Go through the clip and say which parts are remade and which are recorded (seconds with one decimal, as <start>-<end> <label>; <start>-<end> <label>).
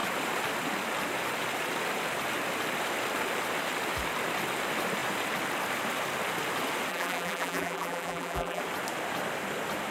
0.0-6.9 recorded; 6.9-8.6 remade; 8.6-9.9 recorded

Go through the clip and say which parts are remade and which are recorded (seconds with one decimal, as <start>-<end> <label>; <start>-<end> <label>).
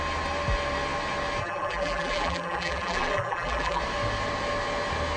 0.0-1.4 recorded; 1.4-3.8 remade; 3.8-5.2 recorded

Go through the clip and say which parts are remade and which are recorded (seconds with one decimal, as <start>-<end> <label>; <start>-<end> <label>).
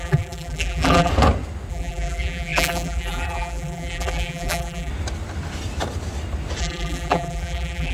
0.0-1.1 remade; 1.1-1.7 recorded; 1.7-4.9 remade; 4.9-6.6 recorded; 6.6-7.9 remade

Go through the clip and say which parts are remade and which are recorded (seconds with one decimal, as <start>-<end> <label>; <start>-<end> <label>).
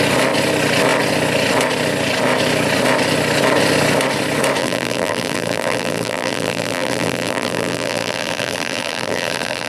0.0-4.6 recorded; 4.6-9.7 remade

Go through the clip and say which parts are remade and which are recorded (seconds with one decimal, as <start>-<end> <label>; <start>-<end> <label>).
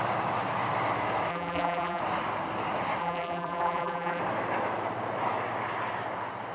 0.0-1.3 recorded; 1.3-2.0 remade; 2.0-3.0 recorded; 3.0-4.2 remade; 4.2-6.5 recorded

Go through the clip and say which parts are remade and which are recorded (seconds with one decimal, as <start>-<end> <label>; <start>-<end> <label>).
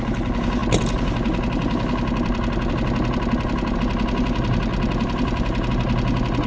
0.0-4.7 recorded; 4.7-5.7 remade; 5.7-6.5 recorded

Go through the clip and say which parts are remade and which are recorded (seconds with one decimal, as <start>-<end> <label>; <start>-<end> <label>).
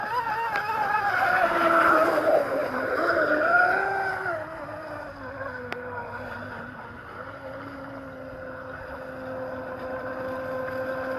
0.0-2.6 recorded; 2.6-3.5 remade; 3.5-11.2 recorded